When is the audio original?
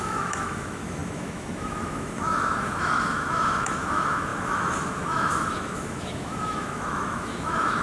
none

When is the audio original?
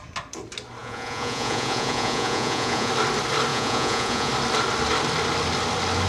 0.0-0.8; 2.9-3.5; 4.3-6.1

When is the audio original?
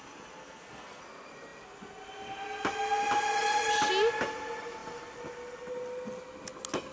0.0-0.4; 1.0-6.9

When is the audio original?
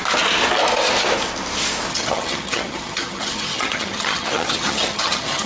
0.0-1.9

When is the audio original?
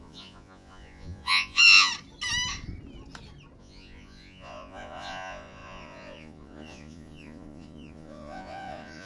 1.9-3.6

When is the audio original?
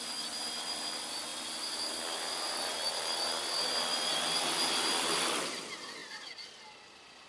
0.0-7.3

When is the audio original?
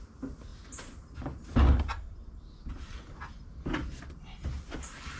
0.0-5.2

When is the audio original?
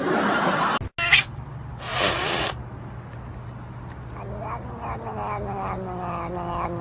0.0-1.9; 2.6-6.8